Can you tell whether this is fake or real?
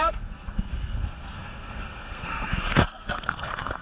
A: fake